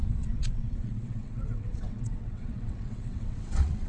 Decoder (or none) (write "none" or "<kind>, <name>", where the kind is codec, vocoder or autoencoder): vocoder, WaveNeXt